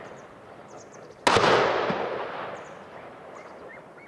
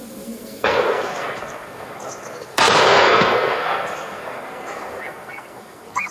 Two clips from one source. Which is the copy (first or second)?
second